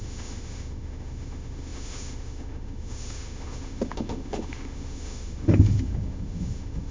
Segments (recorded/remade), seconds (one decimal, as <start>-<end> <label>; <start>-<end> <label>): 0.0-6.9 remade